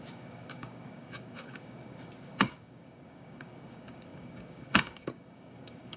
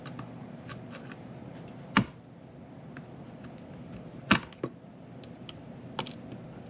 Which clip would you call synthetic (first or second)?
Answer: first